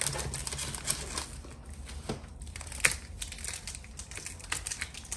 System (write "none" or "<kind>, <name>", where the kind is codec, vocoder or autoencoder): none